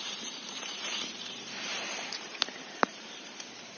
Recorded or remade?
remade